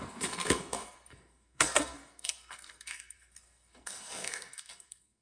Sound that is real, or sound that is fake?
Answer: fake